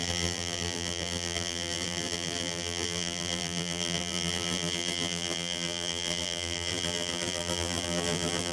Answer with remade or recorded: remade